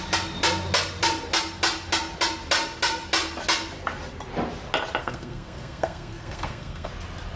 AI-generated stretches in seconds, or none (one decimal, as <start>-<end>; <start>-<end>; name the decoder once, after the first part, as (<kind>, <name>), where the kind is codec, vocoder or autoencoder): 5.0-6.9 (codec, SNAC)